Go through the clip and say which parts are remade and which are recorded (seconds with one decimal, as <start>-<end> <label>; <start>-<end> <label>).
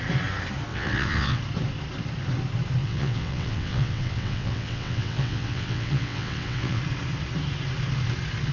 0.0-0.7 recorded; 0.7-1.4 remade; 1.4-2.8 recorded; 2.8-6.8 remade; 6.8-8.5 recorded